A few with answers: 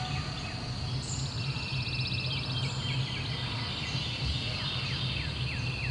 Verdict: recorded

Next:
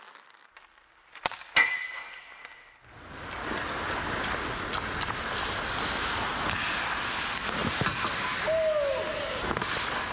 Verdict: recorded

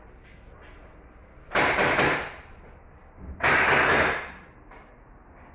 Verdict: recorded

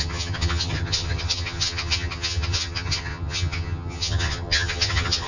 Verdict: remade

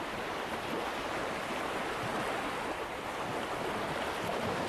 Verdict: recorded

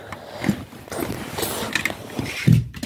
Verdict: recorded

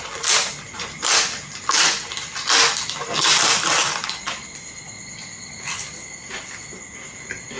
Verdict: remade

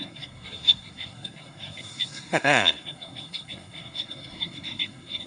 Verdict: remade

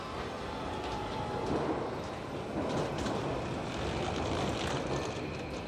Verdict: recorded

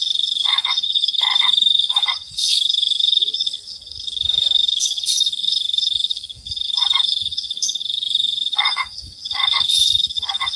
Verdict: remade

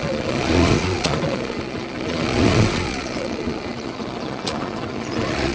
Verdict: remade